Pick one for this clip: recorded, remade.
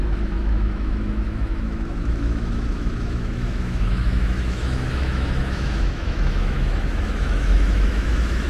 remade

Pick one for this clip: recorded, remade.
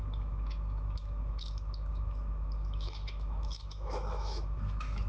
remade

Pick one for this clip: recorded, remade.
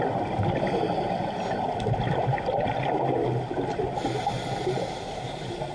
recorded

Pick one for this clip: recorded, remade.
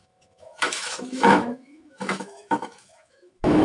remade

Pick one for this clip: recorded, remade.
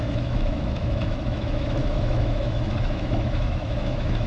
remade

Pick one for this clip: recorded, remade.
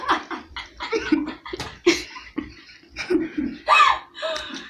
recorded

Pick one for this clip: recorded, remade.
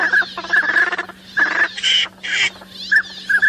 recorded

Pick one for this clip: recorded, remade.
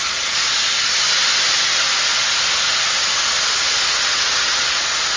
recorded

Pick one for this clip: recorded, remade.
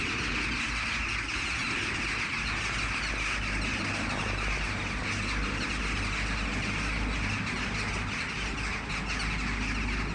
recorded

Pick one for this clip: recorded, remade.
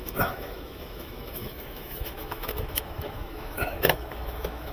remade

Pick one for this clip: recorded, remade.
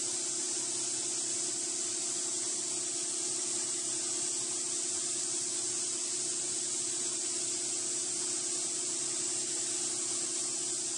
recorded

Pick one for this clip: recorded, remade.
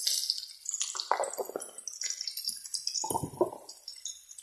recorded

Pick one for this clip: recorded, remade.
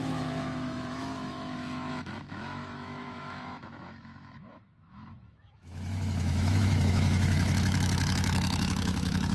remade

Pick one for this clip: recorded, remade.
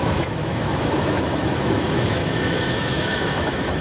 remade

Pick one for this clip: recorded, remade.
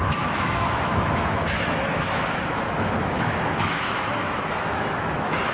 remade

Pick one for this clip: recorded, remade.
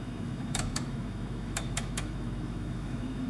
remade